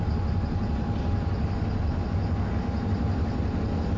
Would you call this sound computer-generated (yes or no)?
no